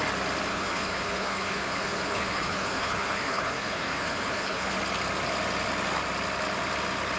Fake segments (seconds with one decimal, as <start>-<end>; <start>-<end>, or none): 0.5-4.8